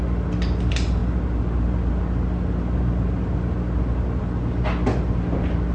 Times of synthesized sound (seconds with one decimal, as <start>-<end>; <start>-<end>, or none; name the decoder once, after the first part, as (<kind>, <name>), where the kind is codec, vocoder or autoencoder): none